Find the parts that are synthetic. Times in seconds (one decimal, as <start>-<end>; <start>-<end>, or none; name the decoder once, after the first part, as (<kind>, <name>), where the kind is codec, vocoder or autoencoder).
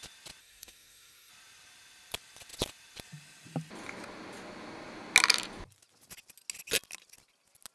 0.4-1.3 (codec, SNAC)